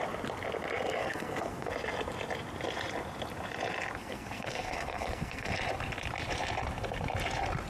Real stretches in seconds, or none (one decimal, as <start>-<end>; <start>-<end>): 0.0-1.0; 1.7-4.0; 5.5-7.7